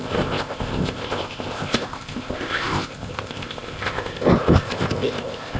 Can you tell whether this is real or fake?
fake